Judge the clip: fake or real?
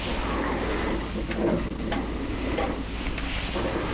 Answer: real